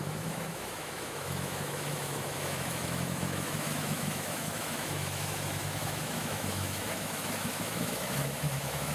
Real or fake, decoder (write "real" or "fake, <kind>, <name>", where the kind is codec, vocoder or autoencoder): fake, autoencoder, DAC-VAE